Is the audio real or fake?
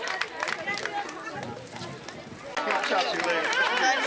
real